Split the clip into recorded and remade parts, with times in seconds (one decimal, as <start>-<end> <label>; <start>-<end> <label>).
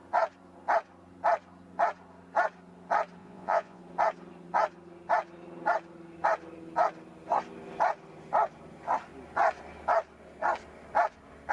0.0-3.2 recorded; 3.2-3.8 remade; 3.8-11.5 recorded